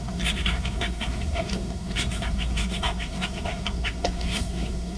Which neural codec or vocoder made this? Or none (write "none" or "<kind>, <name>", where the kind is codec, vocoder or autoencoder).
codec, SNAC